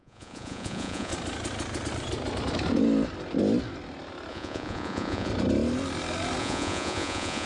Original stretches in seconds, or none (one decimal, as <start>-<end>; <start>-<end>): 1.1-4.3; 5.3-6.4